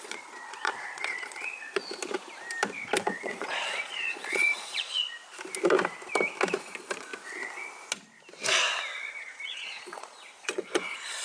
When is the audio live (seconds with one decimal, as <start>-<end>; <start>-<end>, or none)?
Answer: 1.8-3.0; 5.2-6.6; 7.1-9.1